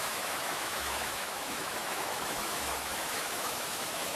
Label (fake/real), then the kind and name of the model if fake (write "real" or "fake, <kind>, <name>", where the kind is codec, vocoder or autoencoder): fake, autoencoder, DAC-VAE